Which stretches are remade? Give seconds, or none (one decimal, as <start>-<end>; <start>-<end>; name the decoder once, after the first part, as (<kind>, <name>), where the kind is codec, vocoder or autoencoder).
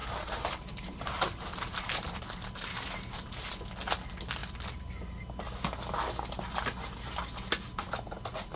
0.0-2.4 (vocoder, BigVGAN v2)